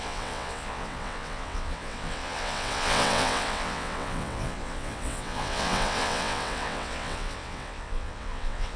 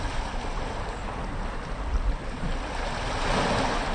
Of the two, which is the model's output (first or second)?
first